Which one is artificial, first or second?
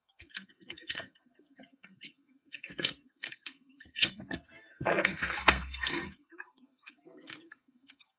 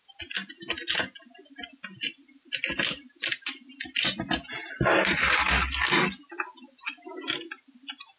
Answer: first